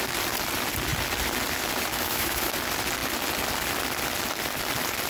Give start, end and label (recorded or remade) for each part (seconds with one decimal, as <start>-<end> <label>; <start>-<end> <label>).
0.0-1.9 recorded; 1.9-2.5 remade; 2.5-5.1 recorded